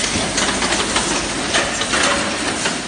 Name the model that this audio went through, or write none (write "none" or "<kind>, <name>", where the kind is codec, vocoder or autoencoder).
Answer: none